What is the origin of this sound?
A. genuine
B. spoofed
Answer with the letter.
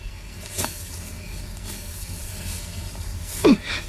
B